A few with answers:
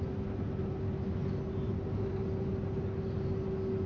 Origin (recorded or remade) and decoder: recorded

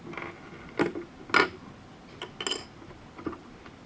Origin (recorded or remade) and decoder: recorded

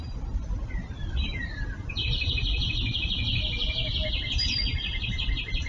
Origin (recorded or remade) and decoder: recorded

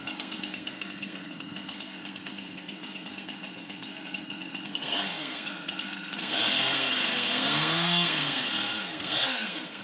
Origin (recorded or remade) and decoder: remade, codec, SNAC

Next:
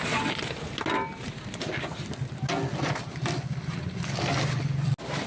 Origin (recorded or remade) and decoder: recorded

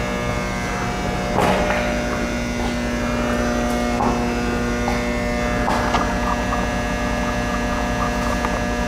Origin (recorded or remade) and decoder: recorded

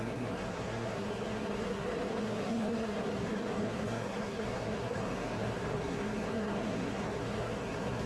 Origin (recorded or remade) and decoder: remade, codec, SNAC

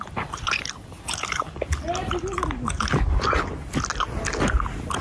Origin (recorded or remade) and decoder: recorded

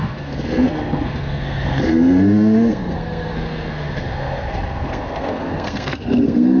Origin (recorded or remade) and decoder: remade, codec, SNAC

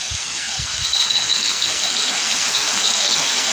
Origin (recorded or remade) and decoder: remade, codec, SNAC